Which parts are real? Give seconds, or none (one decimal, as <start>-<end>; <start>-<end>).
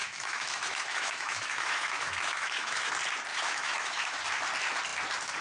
2.9-3.3; 4.2-5.4